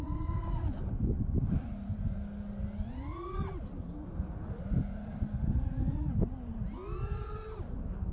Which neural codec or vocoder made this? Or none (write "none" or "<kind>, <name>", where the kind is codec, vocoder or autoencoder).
none